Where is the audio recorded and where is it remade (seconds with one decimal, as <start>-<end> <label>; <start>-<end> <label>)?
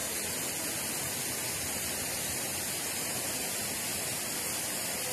0.0-5.1 recorded